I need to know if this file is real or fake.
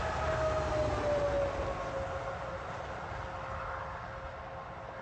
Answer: real